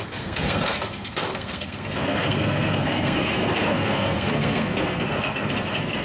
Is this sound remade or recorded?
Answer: remade